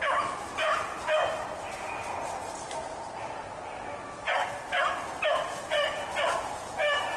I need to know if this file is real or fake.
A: real